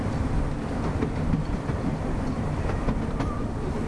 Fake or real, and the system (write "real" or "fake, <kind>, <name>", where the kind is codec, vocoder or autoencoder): real